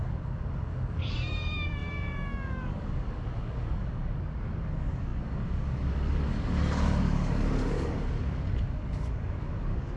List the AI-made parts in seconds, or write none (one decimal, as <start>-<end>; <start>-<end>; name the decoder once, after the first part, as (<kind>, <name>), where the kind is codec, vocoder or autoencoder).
0.0-10.0 (codec, DAC)